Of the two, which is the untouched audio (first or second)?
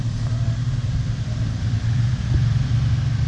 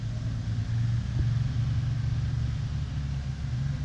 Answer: second